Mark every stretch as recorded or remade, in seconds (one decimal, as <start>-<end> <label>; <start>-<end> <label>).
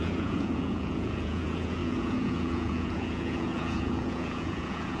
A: 0.0-5.0 remade